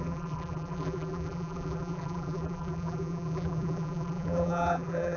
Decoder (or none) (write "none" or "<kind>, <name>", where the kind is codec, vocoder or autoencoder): vocoder, BigVGAN v2